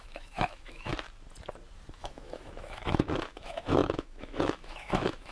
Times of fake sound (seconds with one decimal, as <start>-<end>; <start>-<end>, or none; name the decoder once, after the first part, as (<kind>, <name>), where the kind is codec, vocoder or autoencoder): 0.0-0.9 (autoencoder, DAC-VAE); 1.9-5.3